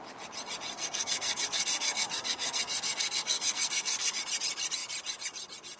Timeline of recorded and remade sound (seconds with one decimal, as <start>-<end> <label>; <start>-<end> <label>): 0.0-0.7 recorded; 0.7-4.2 remade; 4.2-5.8 recorded